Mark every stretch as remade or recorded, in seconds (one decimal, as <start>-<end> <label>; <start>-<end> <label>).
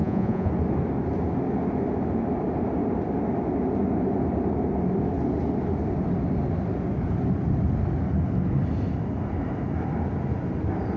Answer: 0.0-0.5 remade; 0.5-11.0 recorded